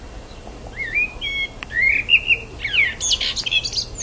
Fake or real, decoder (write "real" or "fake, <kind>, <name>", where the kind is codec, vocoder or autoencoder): real